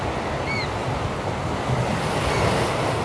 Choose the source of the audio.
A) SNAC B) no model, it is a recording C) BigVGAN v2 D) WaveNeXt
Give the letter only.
B